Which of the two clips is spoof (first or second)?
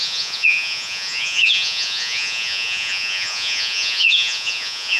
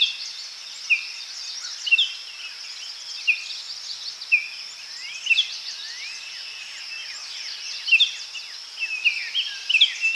first